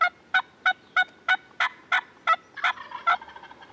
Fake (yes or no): no